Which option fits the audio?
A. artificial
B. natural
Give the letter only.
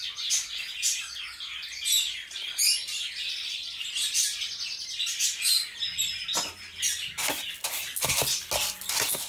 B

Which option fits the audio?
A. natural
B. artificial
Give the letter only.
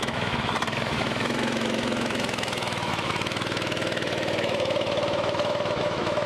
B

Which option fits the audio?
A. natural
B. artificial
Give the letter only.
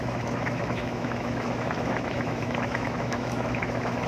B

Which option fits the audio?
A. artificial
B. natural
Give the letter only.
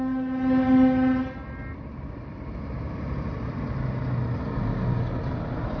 B